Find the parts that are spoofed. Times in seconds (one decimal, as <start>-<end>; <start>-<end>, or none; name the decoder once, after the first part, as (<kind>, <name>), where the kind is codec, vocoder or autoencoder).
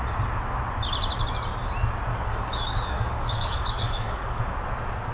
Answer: 2.1-4.4 (codec, DAC)